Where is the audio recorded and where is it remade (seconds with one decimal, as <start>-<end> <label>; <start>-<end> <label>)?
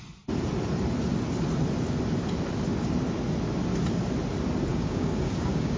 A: 0.0-4.7 recorded; 4.7-5.8 remade